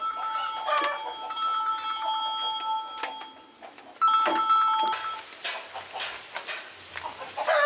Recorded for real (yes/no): yes